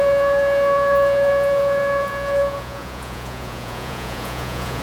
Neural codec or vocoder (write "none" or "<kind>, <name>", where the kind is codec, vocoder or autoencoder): vocoder, Vocos